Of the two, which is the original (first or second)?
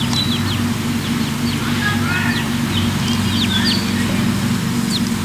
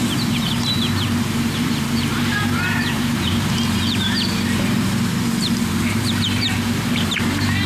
first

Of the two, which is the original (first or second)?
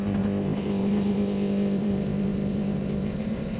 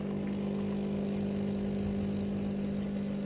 second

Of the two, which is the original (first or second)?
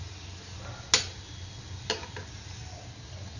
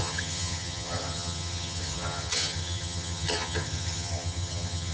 first